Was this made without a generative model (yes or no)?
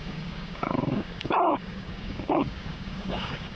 no